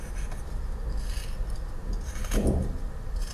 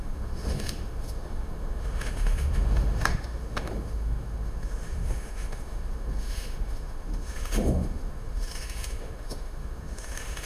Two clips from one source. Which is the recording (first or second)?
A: first